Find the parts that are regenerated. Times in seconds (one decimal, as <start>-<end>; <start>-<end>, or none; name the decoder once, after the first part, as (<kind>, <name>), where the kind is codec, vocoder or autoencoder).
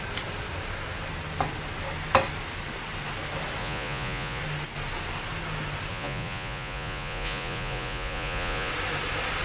3.6-4.4 (vocoder, Vocos); 5.9-8.7